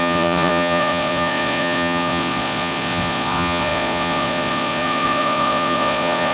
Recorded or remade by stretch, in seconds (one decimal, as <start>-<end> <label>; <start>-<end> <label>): 0.0-6.3 remade